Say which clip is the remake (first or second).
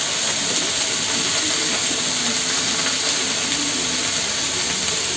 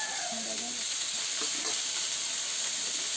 second